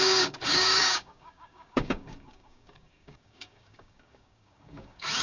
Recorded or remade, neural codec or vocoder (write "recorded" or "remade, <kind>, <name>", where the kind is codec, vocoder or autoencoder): remade, codec, DAC